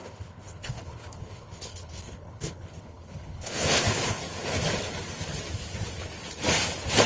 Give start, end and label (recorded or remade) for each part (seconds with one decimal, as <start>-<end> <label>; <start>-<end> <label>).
0.0-4.2 remade; 4.2-7.1 recorded